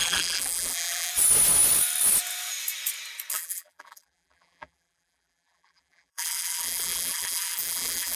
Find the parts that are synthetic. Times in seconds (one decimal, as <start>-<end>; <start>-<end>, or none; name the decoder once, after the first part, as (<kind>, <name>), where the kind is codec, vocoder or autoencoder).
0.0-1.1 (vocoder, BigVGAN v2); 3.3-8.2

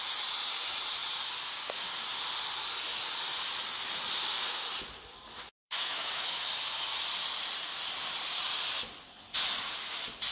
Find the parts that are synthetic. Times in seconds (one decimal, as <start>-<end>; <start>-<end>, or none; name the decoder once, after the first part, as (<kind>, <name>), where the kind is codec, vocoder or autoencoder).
5.6-6.5 (autoencoder, DAC-VAE)

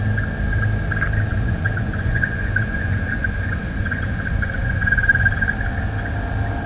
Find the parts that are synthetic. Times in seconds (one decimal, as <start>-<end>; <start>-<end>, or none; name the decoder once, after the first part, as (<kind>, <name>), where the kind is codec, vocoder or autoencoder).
1.3-5.3 (vocoder, Vocos)